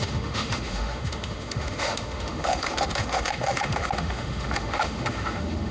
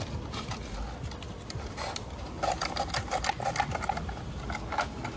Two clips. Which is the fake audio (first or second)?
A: first